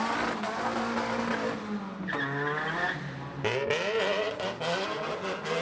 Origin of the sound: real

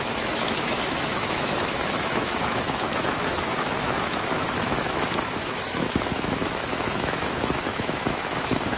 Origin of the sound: fake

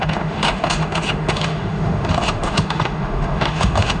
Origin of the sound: fake